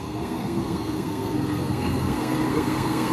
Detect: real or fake fake